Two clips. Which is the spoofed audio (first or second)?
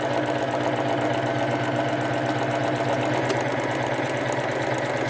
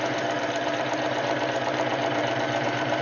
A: second